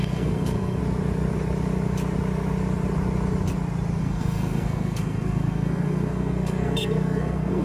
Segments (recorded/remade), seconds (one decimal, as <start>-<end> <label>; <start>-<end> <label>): 0.0-0.8 remade; 0.8-4.0 recorded; 4.0-7.6 remade